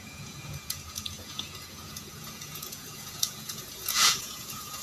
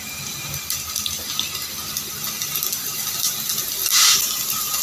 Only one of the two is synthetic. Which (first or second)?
first